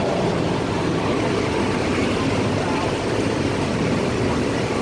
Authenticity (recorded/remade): recorded